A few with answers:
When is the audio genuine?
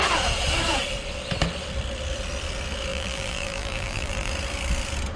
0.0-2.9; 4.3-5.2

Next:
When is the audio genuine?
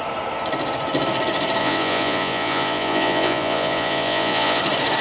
0.0-1.6; 4.6-5.0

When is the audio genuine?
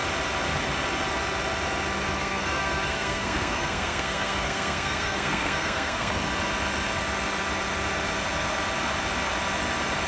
0.0-2.2; 6.1-10.1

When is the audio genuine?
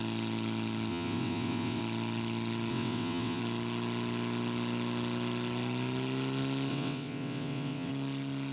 0.0-0.9; 1.8-2.7; 3.4-6.7; 7.9-8.5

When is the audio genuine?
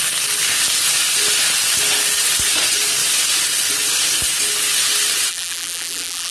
0.0-5.3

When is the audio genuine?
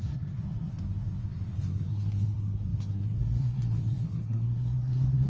none